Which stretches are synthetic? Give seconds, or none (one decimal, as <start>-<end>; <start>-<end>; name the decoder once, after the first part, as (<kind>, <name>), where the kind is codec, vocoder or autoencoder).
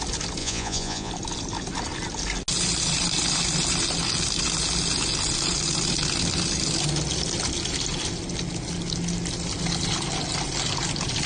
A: 0.4-1.1 (vocoder, Vocos)